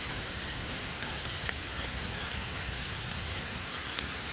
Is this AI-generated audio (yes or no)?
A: yes